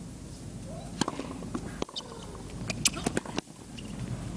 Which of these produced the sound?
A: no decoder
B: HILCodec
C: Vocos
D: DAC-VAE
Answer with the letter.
A